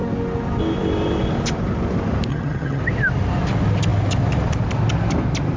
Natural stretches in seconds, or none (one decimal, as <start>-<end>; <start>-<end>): 0.0-2.3; 2.8-5.6